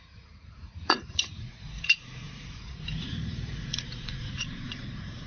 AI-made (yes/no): yes